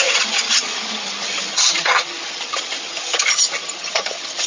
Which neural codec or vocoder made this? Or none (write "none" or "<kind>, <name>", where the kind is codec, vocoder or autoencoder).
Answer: vocoder, HiFi-GAN